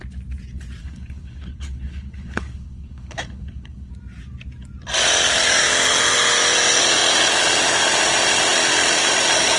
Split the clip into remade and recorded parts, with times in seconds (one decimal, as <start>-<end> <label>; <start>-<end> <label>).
0.0-0.8 recorded; 0.8-3.9 remade; 3.9-9.6 recorded